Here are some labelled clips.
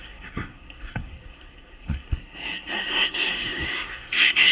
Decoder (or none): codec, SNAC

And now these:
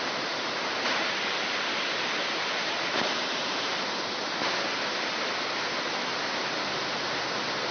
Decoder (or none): none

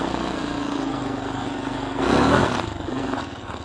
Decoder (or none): codec, SNAC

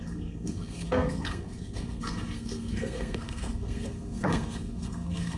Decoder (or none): codec, SNAC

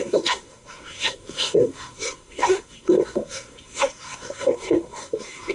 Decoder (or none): codec, SNAC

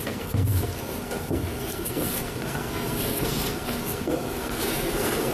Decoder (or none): codec, SNAC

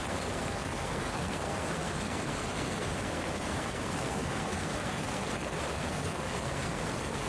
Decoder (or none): codec, SNAC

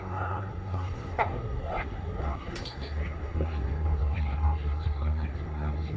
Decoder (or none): codec, SNAC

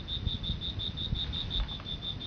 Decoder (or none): none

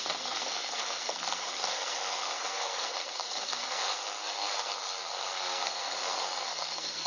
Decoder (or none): codec, SNAC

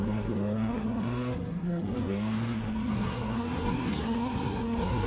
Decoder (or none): codec, SNAC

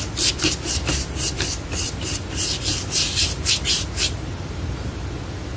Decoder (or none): none